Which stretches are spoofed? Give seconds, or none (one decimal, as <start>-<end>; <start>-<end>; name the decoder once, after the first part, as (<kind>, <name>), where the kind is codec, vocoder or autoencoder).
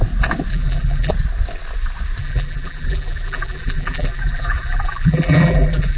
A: 0.5-1.1 (vocoder, BigVGAN v2); 2.2-6.0